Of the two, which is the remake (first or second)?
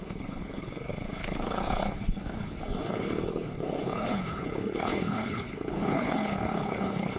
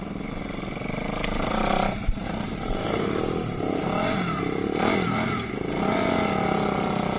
first